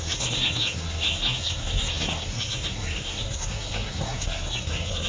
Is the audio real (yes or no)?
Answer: no